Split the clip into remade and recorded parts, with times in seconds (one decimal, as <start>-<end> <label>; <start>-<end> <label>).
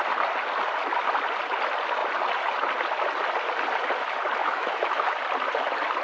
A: 0.0-4.4 recorded; 4.4-5.2 remade; 5.2-6.0 recorded